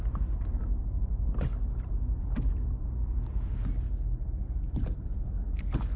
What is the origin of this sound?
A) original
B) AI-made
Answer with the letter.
A